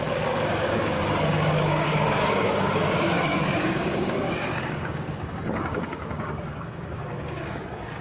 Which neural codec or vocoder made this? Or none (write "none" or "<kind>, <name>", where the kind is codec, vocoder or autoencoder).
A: codec, DAC